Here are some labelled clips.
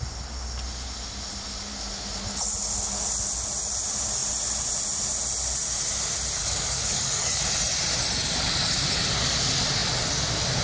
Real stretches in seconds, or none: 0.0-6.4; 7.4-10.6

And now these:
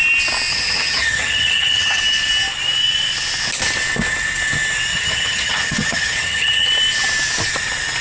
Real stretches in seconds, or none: 0.0-0.5; 2.0-4.9; 6.7-8.0

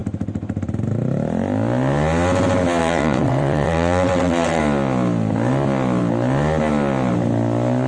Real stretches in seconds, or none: 0.0-2.8; 4.6-7.9

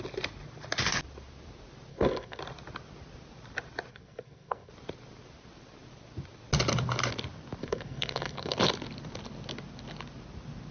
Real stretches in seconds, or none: 0.0-1.9; 2.4-3.9; 4.7-7.6; 8.6-10.7

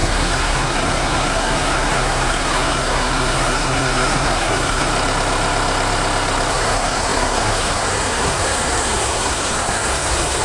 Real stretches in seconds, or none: 4.9-6.5

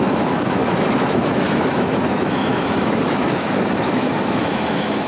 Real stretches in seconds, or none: none

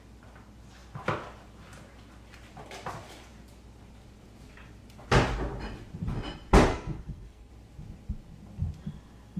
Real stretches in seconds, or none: 0.0-6.7; 7.5-9.4